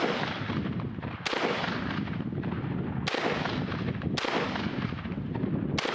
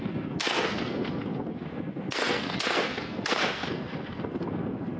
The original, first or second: first